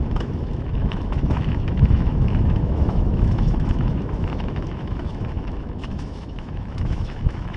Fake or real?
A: fake